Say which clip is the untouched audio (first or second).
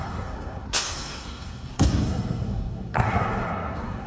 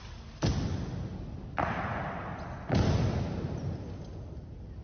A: second